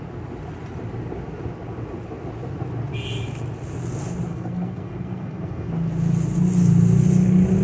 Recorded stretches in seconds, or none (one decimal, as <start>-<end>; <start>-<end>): 0.0-4.3; 5.7-7.6